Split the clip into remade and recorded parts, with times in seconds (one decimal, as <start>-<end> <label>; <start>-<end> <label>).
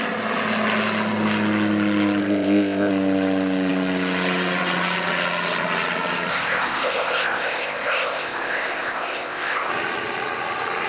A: 0.0-2.2 recorded; 2.2-2.9 remade; 2.9-6.3 recorded; 6.3-9.7 remade; 9.7-10.9 recorded